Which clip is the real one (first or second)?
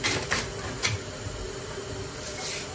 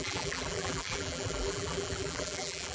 first